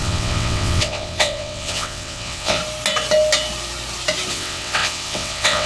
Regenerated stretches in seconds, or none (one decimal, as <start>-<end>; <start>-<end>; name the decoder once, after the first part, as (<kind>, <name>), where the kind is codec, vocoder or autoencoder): 0.0-2.6 (vocoder, WaveNeXt); 4.3-5.7